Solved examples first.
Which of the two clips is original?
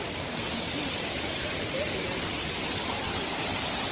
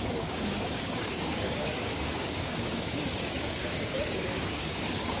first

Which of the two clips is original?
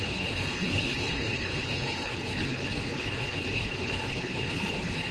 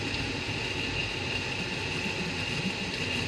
second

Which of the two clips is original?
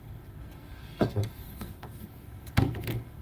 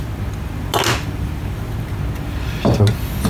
second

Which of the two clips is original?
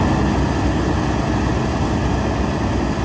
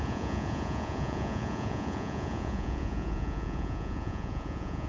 first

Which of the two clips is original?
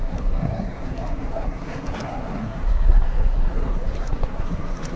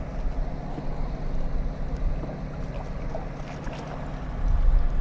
second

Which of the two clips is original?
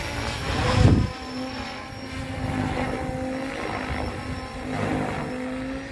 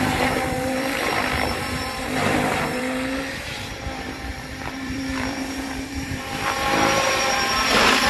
first